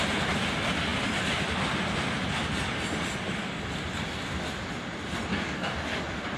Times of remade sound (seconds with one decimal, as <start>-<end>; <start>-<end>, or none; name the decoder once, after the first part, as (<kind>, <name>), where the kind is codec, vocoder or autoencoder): 5.3-6.0 (codec, DAC)